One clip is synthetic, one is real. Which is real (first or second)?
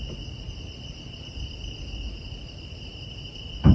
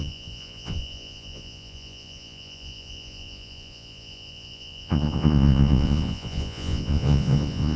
first